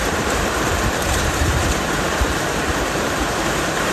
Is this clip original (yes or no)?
no